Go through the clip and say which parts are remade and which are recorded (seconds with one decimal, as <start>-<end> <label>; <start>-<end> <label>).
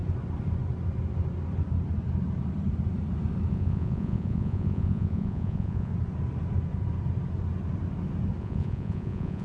0.0-3.5 recorded; 3.5-5.9 remade; 5.9-8.4 recorded; 8.4-9.4 remade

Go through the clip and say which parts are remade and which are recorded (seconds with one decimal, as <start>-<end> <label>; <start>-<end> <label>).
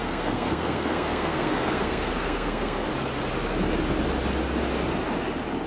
0.0-2.9 remade; 2.9-5.7 recorded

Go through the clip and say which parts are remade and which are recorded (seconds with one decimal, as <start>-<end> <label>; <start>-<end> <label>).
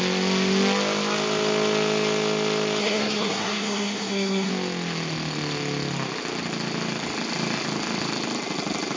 0.0-2.8 recorded; 2.8-4.5 remade; 4.5-9.0 recorded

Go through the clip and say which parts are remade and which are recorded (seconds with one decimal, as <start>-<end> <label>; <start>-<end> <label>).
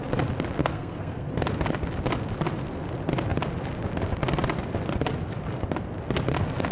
0.0-0.6 recorded; 0.6-1.3 remade; 1.3-6.7 recorded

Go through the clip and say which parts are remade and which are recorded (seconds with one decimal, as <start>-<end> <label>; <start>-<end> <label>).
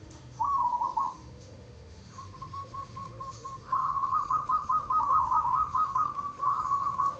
0.0-7.2 remade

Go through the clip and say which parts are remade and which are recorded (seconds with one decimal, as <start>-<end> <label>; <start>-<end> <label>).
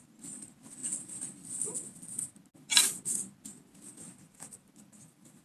0.0-5.4 recorded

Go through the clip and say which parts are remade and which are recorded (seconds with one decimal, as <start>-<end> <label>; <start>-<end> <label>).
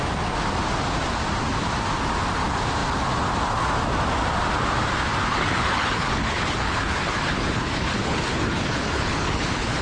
0.0-5.3 recorded; 5.3-9.8 remade